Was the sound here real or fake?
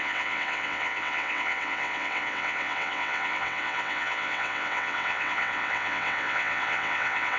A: fake